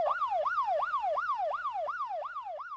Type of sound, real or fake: real